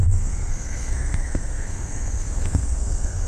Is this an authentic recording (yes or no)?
no